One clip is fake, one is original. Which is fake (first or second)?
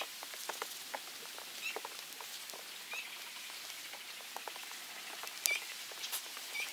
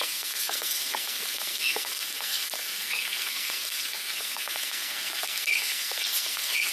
second